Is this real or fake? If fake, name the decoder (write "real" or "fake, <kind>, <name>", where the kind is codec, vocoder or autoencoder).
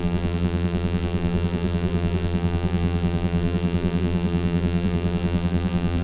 fake, vocoder, BigVGAN v2